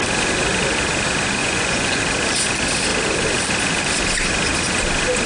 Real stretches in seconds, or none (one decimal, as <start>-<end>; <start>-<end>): 0.0-1.4; 2.0-5.3